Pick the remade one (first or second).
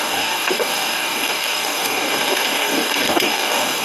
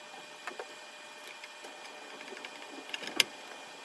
first